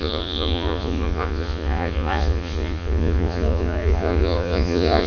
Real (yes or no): no